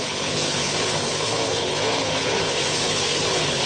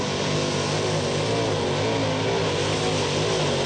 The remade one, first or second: first